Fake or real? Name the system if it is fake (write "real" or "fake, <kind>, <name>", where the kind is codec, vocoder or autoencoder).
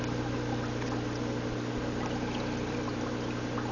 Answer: real